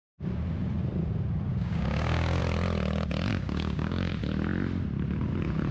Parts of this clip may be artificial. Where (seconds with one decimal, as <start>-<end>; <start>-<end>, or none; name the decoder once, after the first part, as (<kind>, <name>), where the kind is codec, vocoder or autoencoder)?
1.5-2.4 (codec, DAC); 3.3-4.1